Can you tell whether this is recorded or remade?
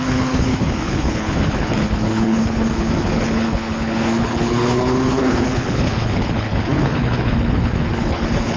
remade